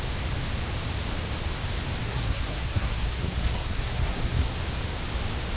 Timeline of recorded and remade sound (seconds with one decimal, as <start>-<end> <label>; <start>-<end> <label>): 0.0-2.0 recorded; 2.0-4.6 remade; 4.6-5.6 recorded